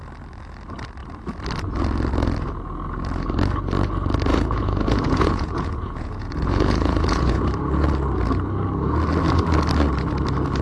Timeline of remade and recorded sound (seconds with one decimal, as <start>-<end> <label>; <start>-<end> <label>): 0.0-4.3 recorded; 4.3-7.4 remade; 7.4-10.6 recorded